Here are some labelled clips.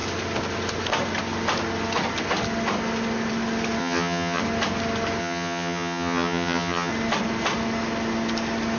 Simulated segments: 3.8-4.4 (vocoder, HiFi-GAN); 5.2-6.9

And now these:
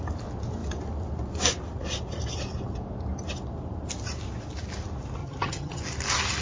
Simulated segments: 5.2-5.8 (vocoder, HiFi-GAN)

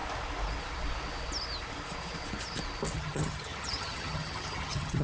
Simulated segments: 3.0-5.0 (vocoder, HiFi-GAN)

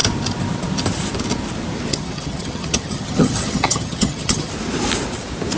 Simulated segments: 1.9-4.5 (vocoder, HiFi-GAN)

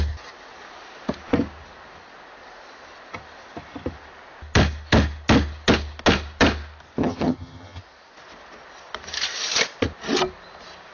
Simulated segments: 7.0-7.8 (vocoder, HiFi-GAN)

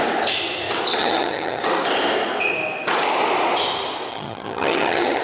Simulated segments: 1.0-1.6 (vocoder, HiFi-GAN); 4.1-5.2

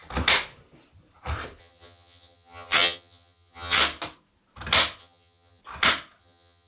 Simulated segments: 1.6-3.8 (vocoder, HiFi-GAN); 5.0-5.6; 6.2-6.7

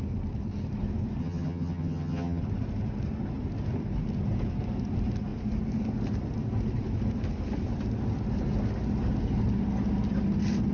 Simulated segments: 1.2-2.4 (vocoder, HiFi-GAN)